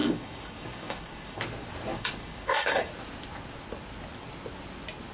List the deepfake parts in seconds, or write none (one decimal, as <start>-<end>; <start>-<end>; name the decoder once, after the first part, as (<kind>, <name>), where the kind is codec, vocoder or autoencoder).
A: 0.0-1.4 (codec, DAC); 1.9-2.9